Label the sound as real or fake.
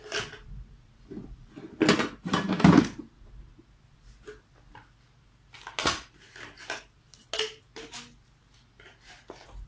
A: real